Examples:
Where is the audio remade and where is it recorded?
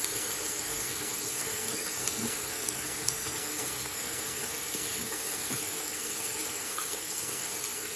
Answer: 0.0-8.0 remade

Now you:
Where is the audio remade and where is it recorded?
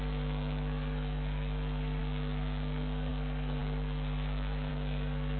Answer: 0.0-5.4 remade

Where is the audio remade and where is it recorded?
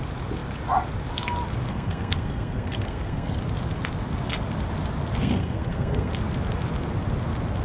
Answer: 0.0-1.7 recorded; 1.7-3.4 remade; 3.4-5.2 recorded; 5.2-6.1 remade; 6.1-7.6 recorded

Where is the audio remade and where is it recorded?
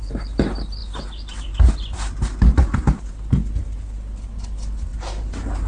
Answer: 0.0-5.7 recorded